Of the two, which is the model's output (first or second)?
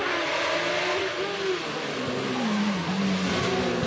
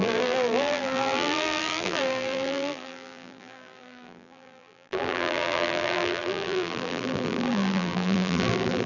second